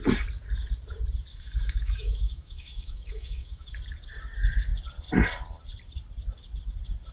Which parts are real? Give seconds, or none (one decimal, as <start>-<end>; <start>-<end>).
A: 0.0-1.3; 3.7-7.1